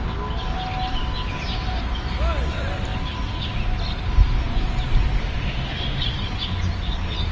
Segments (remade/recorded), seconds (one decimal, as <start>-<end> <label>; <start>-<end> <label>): 0.0-5.2 recorded; 5.2-6.0 remade; 6.0-7.3 recorded

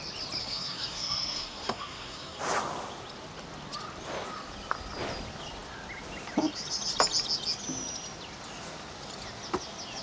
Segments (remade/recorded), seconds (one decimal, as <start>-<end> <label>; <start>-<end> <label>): 0.0-0.4 recorded; 0.4-2.4 remade; 2.4-10.0 recorded

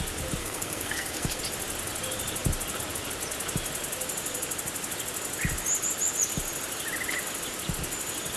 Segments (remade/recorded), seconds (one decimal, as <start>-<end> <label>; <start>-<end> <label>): 0.0-0.4 recorded; 0.4-1.4 remade; 1.4-8.4 recorded

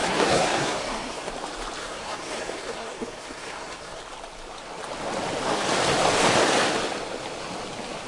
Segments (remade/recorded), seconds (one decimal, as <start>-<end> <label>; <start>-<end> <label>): 0.0-1.3 remade; 1.3-1.8 recorded; 1.8-4.0 remade; 4.0-8.1 recorded

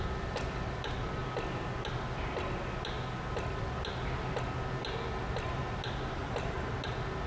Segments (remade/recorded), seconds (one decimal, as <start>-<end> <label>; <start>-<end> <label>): 0.0-6.2 recorded; 6.2-6.7 remade; 6.7-7.3 recorded

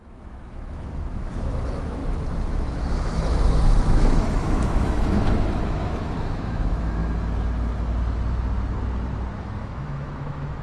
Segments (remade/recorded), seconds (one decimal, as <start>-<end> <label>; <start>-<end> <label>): 0.0-2.0 remade; 2.0-2.7 recorded; 2.7-7.0 remade; 7.0-9.4 recorded; 9.4-10.6 remade

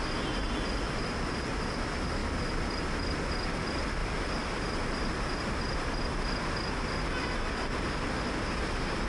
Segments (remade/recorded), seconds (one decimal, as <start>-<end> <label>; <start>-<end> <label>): 0.0-9.1 recorded

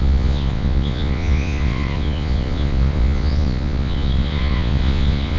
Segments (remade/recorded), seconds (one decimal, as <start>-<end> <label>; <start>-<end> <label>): 0.0-5.4 remade